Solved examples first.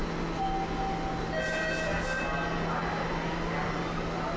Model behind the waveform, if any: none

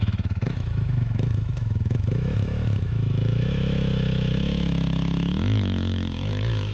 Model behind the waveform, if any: autoencoder, DAC-VAE